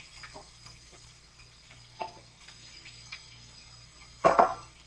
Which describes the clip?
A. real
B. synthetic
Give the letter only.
B